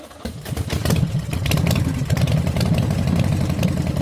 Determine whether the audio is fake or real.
fake